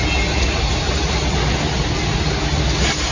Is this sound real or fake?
real